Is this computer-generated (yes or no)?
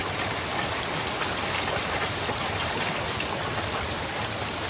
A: no